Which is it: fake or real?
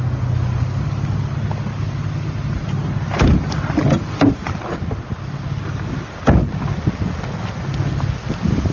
real